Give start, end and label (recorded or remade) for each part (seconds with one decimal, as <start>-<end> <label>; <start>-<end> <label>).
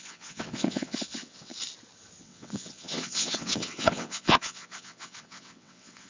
0.0-1.5 remade; 1.5-2.2 recorded; 2.2-6.1 remade